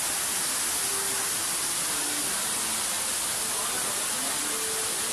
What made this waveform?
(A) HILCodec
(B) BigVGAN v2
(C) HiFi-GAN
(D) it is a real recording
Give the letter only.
D